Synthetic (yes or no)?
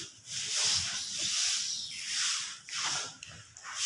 no